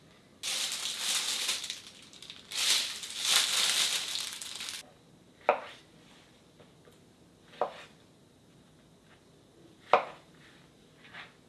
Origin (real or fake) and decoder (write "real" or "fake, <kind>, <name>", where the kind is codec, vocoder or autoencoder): real